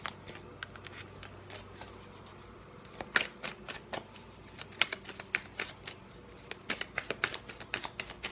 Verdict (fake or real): real